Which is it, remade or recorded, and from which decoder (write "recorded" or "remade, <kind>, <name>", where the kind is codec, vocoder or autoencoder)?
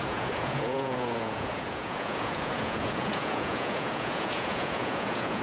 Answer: remade, vocoder, Vocos